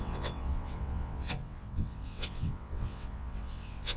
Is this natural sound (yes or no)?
no